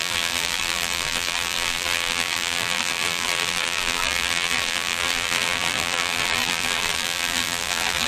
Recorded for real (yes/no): no